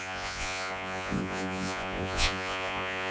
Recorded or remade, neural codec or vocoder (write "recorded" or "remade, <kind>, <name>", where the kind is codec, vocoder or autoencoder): remade, vocoder, Vocos